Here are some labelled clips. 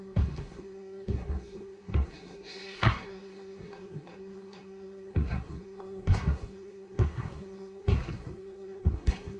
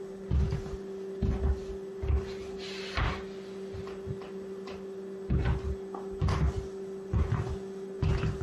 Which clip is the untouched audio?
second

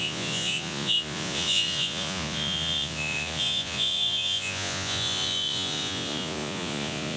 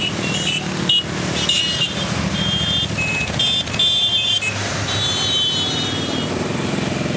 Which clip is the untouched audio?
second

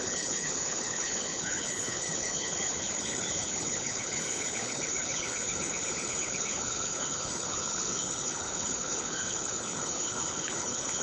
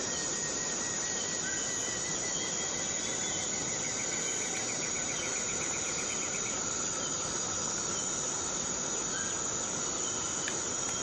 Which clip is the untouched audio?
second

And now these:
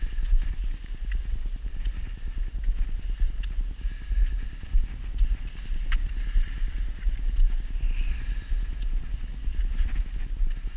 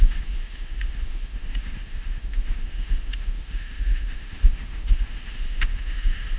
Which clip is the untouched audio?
first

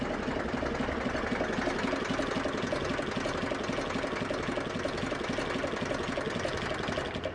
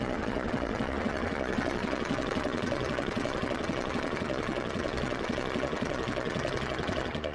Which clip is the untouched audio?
first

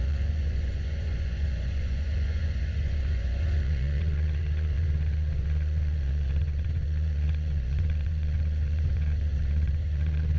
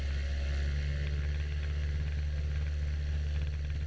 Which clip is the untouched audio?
second